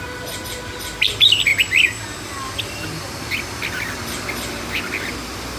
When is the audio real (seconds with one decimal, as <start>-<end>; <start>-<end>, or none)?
0.0-5.6